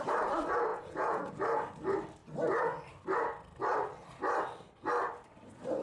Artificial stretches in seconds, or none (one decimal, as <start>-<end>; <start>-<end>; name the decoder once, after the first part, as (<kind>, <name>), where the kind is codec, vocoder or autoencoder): 0.7-1.3 (vocoder, Vocos)